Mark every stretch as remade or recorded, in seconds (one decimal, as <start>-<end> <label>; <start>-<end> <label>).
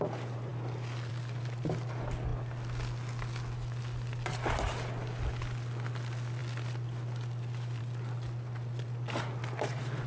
0.0-10.1 recorded